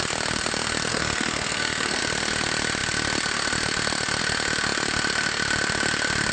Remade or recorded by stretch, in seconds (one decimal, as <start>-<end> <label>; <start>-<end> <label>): 0.0-0.9 recorded; 0.9-2.0 remade; 2.0-6.3 recorded